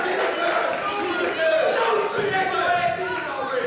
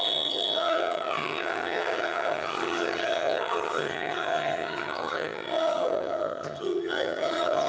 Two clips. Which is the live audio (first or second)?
first